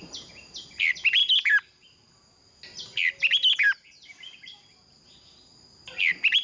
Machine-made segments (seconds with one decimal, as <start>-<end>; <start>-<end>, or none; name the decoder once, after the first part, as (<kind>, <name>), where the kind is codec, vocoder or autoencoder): none